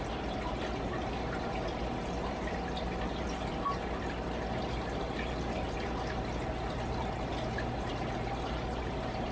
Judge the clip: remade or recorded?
recorded